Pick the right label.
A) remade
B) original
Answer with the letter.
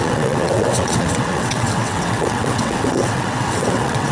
A